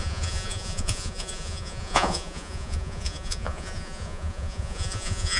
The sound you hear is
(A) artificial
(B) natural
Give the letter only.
A